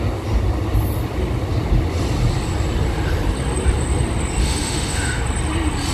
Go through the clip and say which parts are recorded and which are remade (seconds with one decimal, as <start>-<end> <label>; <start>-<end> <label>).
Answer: 0.0-4.4 recorded; 4.4-5.2 remade; 5.2-5.9 recorded